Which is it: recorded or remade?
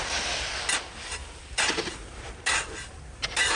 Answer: recorded